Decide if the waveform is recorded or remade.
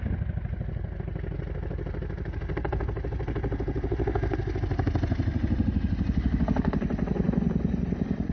recorded